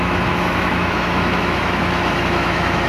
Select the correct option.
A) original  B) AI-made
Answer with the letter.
B